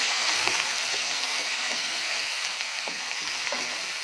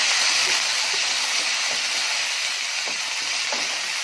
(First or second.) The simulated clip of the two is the first